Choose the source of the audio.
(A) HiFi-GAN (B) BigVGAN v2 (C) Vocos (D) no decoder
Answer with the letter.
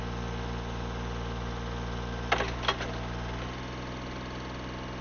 D